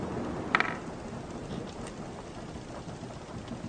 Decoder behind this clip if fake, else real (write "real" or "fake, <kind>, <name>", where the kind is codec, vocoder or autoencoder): real